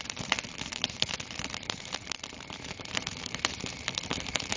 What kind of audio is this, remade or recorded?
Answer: remade